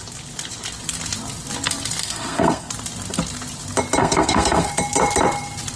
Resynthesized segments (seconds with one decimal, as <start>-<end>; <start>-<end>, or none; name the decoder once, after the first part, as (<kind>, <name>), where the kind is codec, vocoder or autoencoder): 2.0-2.7 (codec, SNAC); 4.0-4.7